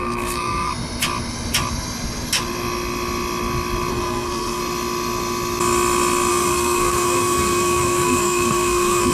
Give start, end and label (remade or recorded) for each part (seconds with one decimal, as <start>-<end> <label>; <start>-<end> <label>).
0.0-0.7 remade; 0.7-3.9 recorded; 3.9-4.6 remade; 4.6-6.3 recorded; 6.3-9.1 remade